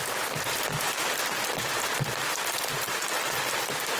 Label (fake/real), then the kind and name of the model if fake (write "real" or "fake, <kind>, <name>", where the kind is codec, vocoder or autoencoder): real